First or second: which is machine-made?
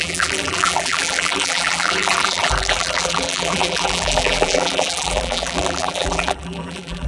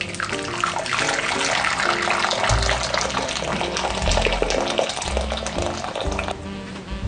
first